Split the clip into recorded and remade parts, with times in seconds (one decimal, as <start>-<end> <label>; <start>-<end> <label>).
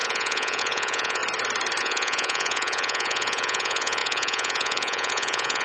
0.0-1.2 remade; 1.2-1.8 recorded; 1.8-5.6 remade